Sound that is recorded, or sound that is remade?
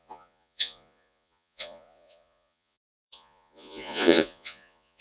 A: remade